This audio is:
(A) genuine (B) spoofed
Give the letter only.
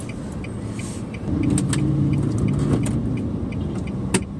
A